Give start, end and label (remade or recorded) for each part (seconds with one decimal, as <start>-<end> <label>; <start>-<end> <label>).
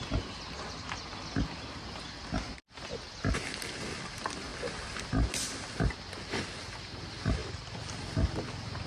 0.0-8.9 recorded